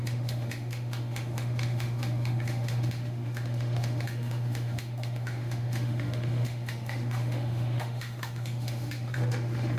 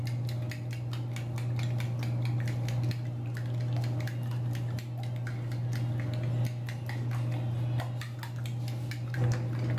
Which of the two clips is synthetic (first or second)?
first